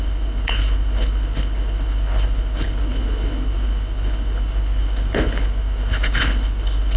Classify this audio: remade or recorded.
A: remade